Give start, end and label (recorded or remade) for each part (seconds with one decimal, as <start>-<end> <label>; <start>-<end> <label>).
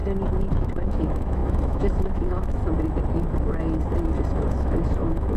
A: 0.0-0.5 recorded; 0.5-2.6 remade; 2.6-4.5 recorded; 4.5-5.4 remade